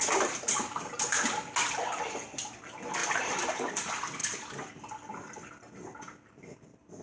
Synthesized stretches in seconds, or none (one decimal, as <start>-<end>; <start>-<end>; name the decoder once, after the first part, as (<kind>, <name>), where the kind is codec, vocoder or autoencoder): 0.0-1.1 (vocoder, BigVGAN v2); 3.0-3.7